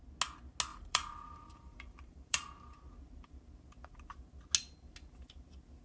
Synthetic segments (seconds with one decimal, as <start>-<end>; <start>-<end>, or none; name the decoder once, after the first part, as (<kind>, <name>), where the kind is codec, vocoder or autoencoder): 0.7-2.9 (vocoder, BigVGAN v2)